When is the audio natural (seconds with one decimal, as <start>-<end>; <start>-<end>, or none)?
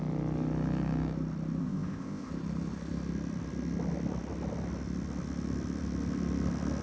0.0-1.6; 2.3-6.8